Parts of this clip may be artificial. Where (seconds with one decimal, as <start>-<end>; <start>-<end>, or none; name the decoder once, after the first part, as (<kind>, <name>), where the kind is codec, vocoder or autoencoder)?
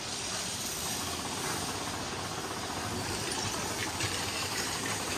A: 3.8-5.2 (vocoder, BigVGAN v2)